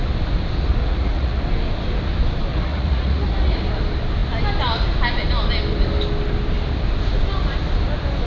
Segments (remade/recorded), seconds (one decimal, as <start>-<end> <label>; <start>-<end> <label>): 0.0-0.8 recorded; 0.8-1.4 remade; 1.4-2.5 recorded; 2.5-3.6 remade; 3.6-8.3 recorded